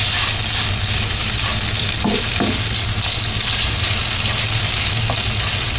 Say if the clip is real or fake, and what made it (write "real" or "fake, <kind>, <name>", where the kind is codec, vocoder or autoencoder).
real